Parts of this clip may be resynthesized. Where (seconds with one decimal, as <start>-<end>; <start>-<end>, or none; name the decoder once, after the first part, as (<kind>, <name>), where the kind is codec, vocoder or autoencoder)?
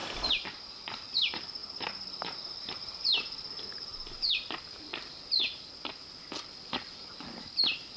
0.0-8.0 (vocoder, BigVGAN v2)